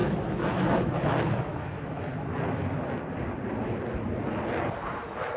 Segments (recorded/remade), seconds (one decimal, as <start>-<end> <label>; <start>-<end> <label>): 0.0-2.1 remade; 2.1-5.0 recorded; 5.0-5.4 remade